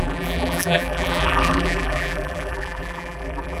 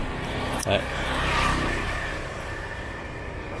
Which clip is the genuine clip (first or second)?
second